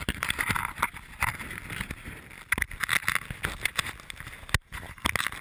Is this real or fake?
real